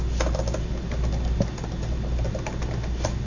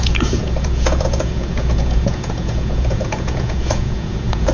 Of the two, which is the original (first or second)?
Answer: first